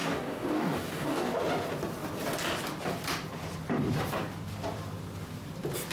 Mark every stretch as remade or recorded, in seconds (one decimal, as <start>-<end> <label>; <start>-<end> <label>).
0.0-1.3 remade; 1.3-5.9 recorded